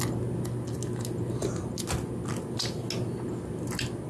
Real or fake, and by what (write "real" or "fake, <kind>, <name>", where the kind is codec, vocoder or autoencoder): real